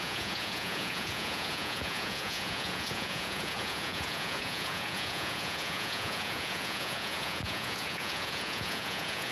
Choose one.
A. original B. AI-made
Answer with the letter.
B